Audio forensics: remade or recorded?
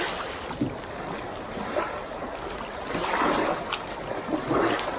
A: recorded